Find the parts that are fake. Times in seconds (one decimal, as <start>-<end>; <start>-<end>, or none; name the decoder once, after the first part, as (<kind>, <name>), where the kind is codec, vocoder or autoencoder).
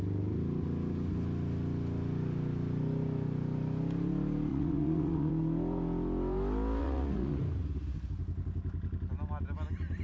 4.5-5.3 (vocoder, Vocos); 6.8-7.4